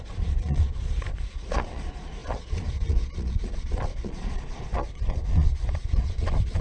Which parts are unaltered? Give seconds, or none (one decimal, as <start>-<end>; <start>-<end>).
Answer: none